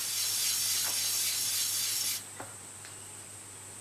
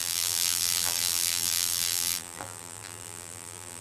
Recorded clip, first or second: first